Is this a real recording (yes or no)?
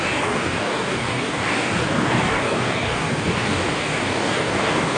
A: no